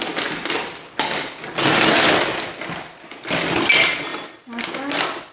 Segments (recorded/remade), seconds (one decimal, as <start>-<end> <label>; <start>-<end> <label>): 0.0-5.3 recorded